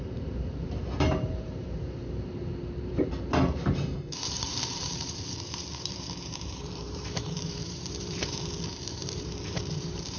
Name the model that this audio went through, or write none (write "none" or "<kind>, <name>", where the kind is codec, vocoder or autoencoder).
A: vocoder, BigVGAN v2